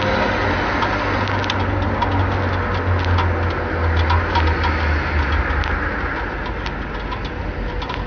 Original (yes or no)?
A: yes